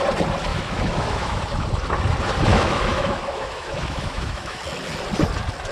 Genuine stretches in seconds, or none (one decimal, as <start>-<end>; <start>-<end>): 0.0-0.5; 1.4-2.5; 4.6-5.7